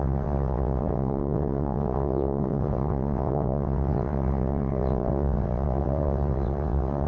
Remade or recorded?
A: remade